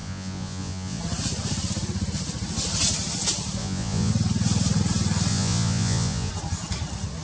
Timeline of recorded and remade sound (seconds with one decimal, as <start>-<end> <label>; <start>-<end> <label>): 0.0-1.0 remade; 1.0-3.6 recorded; 3.6-4.1 remade; 4.1-5.3 recorded; 5.3-6.3 remade; 6.3-7.2 recorded